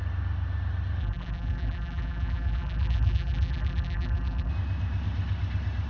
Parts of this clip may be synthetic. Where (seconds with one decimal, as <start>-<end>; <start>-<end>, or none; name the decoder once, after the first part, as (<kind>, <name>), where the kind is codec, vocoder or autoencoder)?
1.0-4.5 (vocoder, BigVGAN v2)